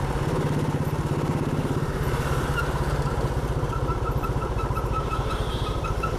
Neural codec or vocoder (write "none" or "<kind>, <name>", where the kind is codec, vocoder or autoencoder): vocoder, BigVGAN v2